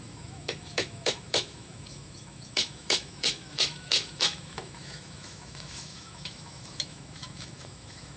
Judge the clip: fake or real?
fake